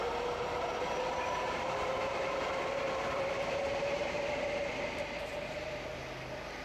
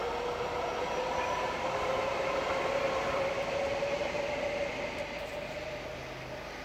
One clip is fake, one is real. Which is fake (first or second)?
first